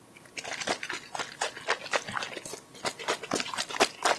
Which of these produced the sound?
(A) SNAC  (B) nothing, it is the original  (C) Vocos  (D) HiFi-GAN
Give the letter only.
B